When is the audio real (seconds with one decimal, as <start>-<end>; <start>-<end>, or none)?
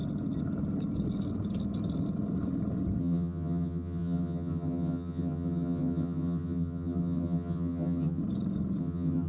0.0-3.0; 8.2-8.8